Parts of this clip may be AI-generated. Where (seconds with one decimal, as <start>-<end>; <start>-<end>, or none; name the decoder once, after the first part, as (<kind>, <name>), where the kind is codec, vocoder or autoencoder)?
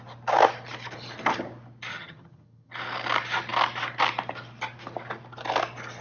1.9-2.7 (vocoder, HiFi-GAN)